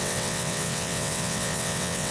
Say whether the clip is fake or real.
fake